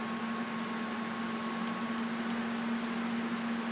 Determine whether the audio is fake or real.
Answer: real